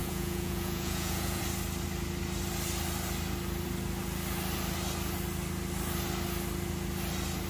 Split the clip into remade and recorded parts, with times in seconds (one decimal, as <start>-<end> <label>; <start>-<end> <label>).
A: 0.0-1.4 remade; 1.4-7.5 recorded